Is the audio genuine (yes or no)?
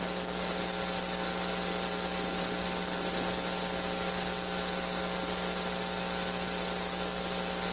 no